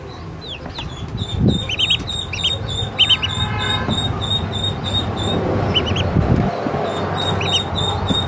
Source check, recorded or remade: recorded